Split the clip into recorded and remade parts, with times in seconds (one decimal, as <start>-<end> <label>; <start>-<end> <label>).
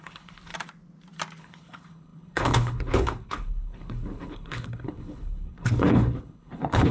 0.0-0.5 remade; 0.5-1.4 recorded; 1.4-6.9 remade